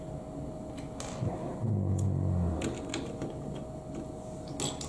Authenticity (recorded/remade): recorded